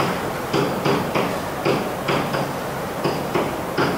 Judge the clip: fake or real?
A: real